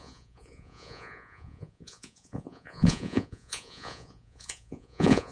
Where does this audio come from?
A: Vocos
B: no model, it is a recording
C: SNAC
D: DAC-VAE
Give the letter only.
A